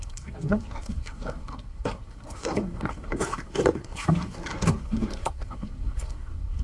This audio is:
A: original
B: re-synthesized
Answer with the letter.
B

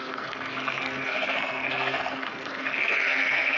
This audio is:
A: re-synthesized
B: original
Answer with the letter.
A